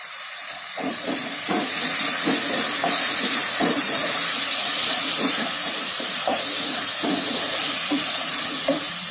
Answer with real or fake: fake